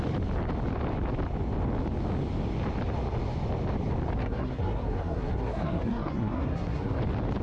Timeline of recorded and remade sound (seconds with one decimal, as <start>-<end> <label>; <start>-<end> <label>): 0.0-4.2 recorded; 4.2-7.0 remade; 7.0-7.4 recorded